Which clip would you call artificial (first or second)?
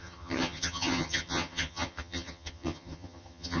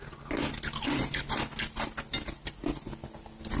first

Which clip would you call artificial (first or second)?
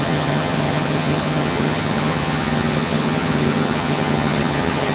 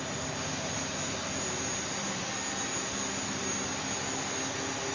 first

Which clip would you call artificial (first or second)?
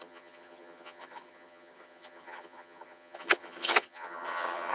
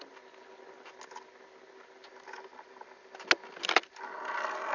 first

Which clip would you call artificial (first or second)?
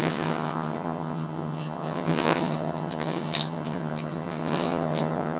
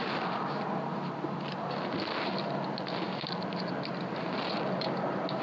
first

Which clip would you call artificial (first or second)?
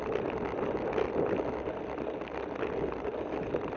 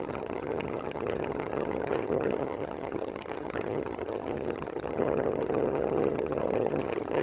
second